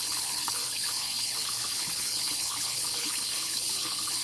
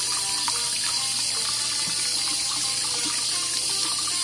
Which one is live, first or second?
second